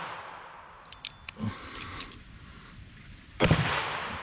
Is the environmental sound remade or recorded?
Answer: recorded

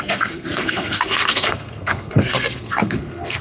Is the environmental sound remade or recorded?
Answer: remade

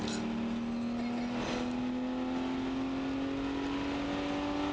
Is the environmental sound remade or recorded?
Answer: recorded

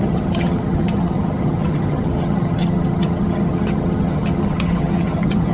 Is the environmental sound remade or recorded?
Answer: remade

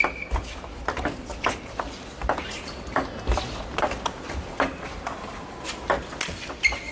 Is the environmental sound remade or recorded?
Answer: recorded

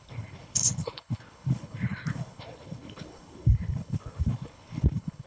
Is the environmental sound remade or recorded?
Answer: remade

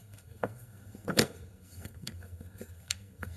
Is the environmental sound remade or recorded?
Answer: remade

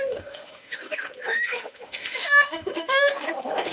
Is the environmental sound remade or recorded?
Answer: remade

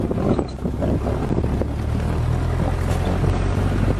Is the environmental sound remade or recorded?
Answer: recorded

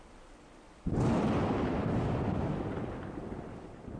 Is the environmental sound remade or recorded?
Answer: remade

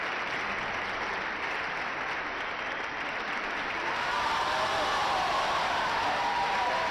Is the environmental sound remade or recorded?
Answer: remade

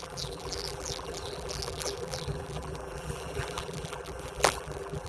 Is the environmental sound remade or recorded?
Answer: remade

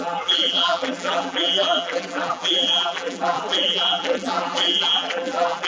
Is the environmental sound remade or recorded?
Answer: remade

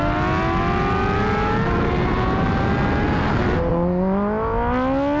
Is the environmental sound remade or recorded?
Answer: recorded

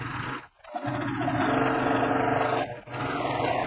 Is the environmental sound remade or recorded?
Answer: recorded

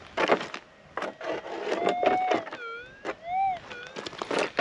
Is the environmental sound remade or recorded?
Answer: recorded